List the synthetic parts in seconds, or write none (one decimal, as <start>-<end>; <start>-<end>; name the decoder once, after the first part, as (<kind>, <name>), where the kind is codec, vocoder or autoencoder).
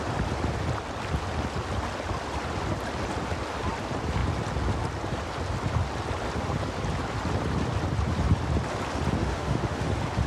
9.2-9.9 (autoencoder, DAC-VAE)